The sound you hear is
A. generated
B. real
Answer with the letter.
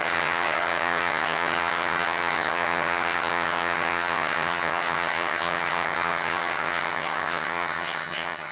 A